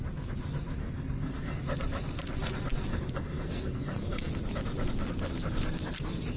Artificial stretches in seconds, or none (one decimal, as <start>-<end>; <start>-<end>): 0.8-1.6; 2.9-4.3